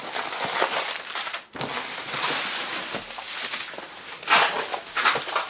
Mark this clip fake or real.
real